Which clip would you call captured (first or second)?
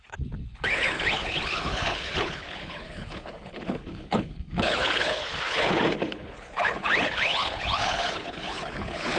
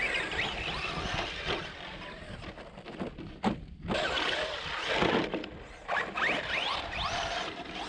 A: second